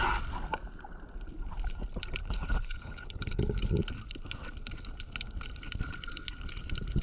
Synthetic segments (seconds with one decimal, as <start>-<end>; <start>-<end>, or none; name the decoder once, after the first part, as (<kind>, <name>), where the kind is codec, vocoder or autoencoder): 2.2-3.7 (codec, HILCodec)